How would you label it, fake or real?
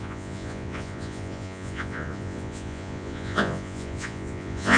fake